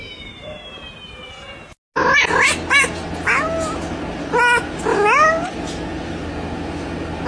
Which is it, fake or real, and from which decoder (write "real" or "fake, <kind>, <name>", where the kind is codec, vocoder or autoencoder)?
real